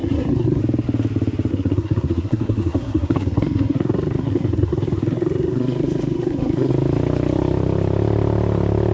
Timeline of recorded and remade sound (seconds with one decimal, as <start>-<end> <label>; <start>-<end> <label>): 0.0-0.6 remade; 0.6-1.5 recorded; 1.5-6.7 remade; 6.7-8.9 recorded